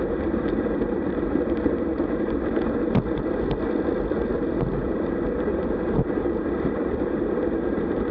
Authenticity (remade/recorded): remade